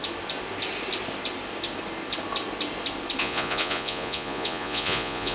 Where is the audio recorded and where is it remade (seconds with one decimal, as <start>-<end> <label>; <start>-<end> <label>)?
0.0-3.2 recorded; 3.2-5.3 remade